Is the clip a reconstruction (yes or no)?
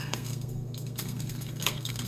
yes